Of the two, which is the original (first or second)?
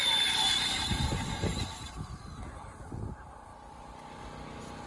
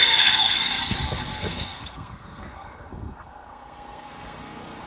first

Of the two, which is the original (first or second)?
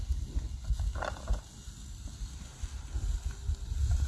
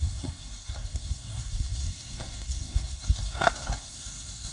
first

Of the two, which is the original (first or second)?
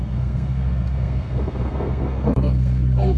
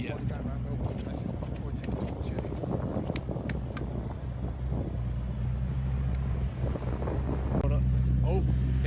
second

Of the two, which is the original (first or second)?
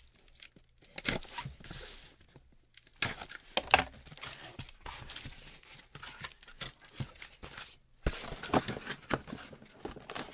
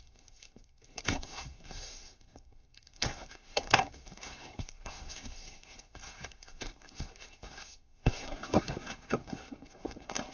first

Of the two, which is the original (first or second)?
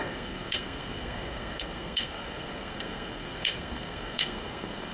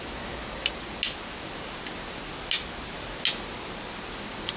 second